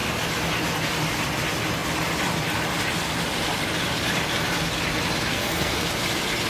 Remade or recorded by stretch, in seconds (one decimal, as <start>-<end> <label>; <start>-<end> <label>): 0.0-5.3 recorded; 5.3-5.9 remade; 5.9-6.5 recorded